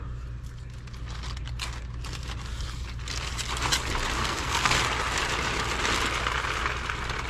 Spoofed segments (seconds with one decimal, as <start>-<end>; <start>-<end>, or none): 4.2-4.8